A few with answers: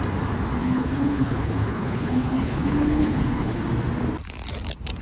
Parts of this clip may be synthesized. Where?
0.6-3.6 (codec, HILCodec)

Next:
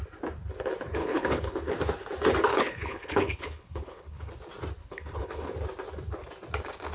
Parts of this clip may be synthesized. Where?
1.0-1.7 (codec, HILCodec); 2.5-4.3; 4.8-5.5

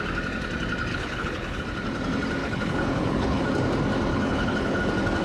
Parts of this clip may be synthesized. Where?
0.9-1.6 (codec, HILCodec); 2.4-3.4; 4.1-4.8